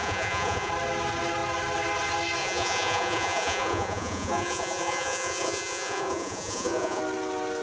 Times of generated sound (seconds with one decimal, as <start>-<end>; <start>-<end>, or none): 0.0-0.7; 2.4-7.0